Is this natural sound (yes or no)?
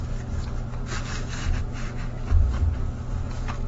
yes